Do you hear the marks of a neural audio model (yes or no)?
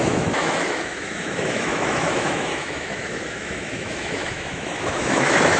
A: yes